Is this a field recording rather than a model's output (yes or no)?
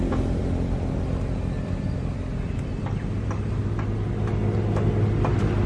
yes